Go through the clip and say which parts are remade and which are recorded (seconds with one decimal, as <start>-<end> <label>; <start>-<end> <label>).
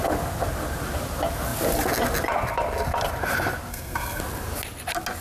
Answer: 0.0-3.7 recorded; 3.7-4.2 remade; 4.2-5.2 recorded